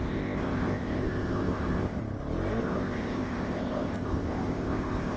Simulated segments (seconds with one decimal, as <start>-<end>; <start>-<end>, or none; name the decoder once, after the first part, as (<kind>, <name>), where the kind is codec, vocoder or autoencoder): 0.0-2.0 (codec, ZipCodec); 2.6-5.2